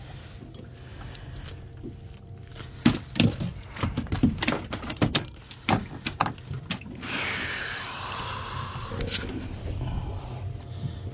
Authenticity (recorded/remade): recorded